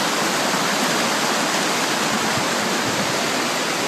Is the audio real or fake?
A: real